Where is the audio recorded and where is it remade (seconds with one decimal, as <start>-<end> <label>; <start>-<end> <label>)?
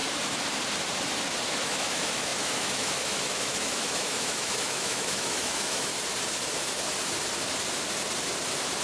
0.0-1.5 recorded; 1.5-5.9 remade; 5.9-8.8 recorded